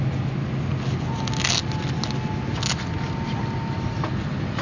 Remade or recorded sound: recorded